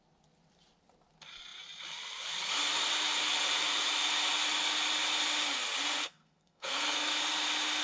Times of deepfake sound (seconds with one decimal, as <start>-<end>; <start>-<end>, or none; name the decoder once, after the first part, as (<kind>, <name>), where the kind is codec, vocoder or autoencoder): 6.0-7.1 (codec, SNAC)